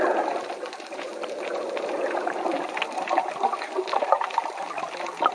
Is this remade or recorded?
recorded